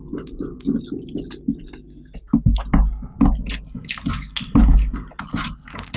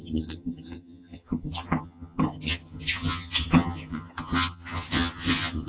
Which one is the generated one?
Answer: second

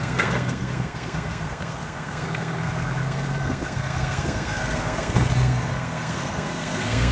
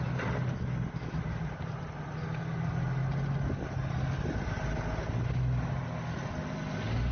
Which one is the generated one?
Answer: first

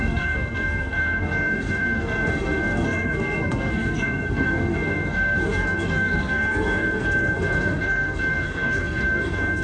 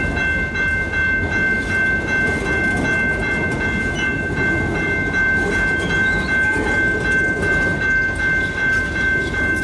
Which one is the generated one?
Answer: first